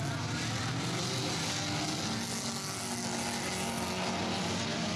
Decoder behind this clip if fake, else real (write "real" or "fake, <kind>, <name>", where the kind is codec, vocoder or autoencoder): real